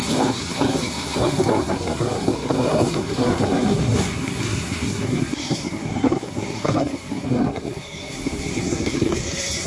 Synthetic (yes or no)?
yes